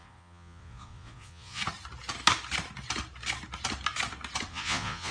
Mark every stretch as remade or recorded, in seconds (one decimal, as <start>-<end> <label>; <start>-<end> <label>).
0.0-1.6 remade; 1.6-4.5 recorded; 4.5-5.1 remade